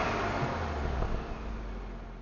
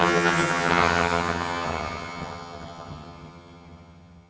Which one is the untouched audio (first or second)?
first